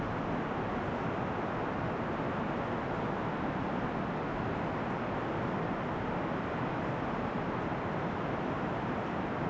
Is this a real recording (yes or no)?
yes